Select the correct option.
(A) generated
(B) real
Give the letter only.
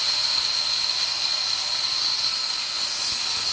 B